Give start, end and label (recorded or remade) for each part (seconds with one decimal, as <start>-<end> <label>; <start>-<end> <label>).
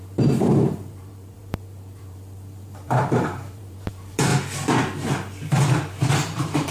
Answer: 0.0-4.3 remade; 4.3-6.1 recorded; 6.1-6.7 remade